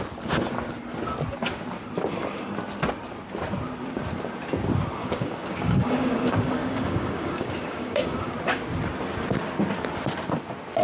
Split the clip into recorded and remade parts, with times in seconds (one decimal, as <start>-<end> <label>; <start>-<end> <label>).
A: 0.0-5.0 recorded; 5.0-8.3 remade; 8.3-10.8 recorded